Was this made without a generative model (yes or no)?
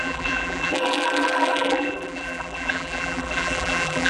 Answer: no